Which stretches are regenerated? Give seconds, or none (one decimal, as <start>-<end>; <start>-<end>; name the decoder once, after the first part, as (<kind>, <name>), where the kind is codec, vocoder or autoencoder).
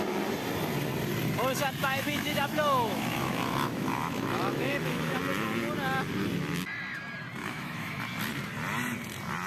1.8-5.2 (autoencoder, DAC-VAE); 7.4-8.0